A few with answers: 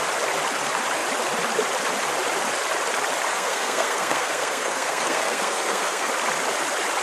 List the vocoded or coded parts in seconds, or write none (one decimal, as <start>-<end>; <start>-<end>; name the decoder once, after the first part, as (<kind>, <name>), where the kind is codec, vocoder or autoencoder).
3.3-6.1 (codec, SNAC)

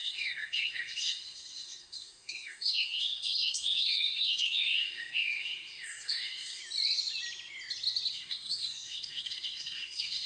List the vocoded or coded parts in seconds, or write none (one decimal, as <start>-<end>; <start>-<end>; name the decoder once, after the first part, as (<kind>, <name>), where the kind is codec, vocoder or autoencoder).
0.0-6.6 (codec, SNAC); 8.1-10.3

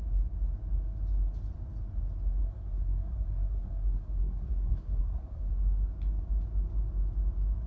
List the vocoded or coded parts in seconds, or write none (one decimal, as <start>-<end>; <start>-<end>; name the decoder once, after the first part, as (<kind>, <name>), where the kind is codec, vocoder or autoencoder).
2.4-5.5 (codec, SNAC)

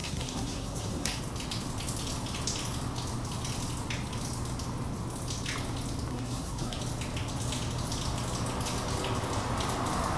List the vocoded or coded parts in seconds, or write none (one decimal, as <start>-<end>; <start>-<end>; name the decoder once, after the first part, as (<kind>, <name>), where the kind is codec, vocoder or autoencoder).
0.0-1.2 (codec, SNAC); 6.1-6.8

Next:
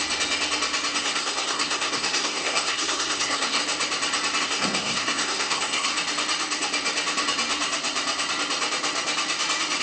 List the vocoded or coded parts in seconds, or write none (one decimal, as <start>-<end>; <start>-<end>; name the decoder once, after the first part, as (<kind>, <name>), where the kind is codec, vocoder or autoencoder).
1.0-3.6 (codec, SNAC); 4.4-5.9

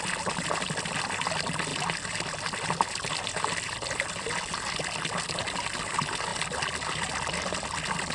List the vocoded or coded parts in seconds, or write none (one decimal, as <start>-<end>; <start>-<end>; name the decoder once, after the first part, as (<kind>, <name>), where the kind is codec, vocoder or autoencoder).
none